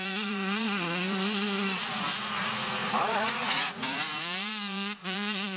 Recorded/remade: remade